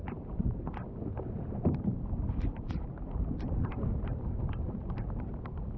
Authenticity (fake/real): real